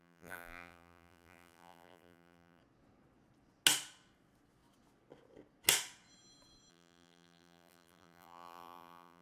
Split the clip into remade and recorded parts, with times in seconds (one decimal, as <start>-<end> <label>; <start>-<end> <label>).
0.0-2.6 remade; 2.6-6.7 recorded; 6.7-9.2 remade